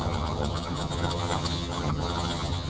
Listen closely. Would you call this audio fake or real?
fake